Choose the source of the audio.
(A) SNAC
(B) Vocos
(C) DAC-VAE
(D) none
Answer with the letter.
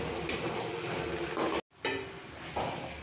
D